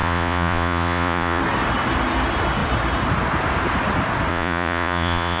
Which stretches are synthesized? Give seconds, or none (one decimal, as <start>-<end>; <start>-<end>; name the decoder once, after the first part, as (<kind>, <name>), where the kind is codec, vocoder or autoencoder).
0.0-1.4 (vocoder, Vocos); 4.3-5.4